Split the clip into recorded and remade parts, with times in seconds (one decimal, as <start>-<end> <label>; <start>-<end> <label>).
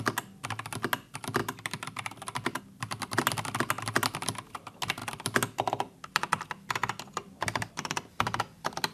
0.0-8.9 recorded